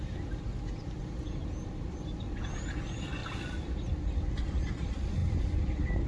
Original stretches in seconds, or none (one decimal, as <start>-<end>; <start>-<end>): 3.2-4.7; 5.2-6.1